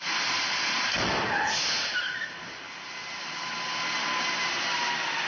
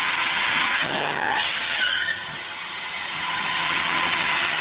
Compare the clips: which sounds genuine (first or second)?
first